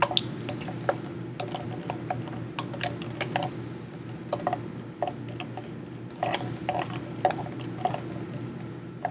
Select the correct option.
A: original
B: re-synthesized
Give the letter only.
A